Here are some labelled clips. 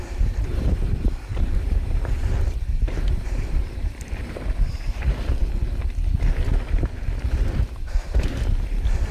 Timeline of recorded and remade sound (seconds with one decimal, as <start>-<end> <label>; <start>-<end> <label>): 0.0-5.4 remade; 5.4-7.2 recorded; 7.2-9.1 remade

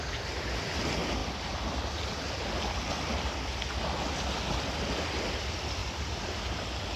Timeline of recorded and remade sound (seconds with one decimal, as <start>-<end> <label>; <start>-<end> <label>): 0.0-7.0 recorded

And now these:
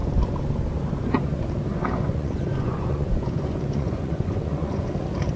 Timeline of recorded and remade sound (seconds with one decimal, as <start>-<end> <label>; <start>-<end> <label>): 0.0-1.7 recorded; 1.7-4.9 remade; 4.9-5.4 recorded

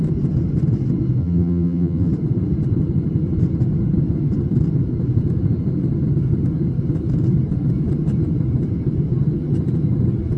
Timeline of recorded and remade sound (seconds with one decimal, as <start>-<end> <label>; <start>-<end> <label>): 0.0-1.2 recorded; 1.2-2.1 remade; 2.1-10.4 recorded

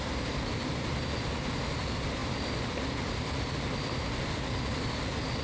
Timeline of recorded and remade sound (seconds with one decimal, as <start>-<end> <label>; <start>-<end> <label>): 0.0-5.4 recorded